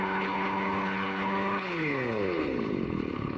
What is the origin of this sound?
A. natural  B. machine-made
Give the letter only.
B